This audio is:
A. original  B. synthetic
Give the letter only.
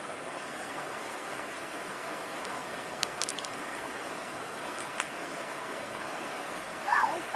B